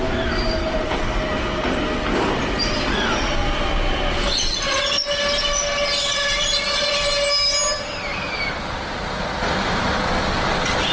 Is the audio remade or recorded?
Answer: recorded